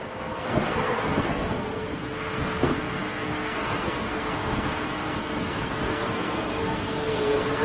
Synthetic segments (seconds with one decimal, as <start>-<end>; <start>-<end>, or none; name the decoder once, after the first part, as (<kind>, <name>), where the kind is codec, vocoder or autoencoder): 0.0-7.6 (codec, SNAC)